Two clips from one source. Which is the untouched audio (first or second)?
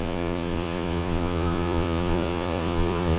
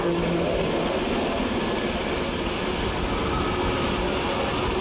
second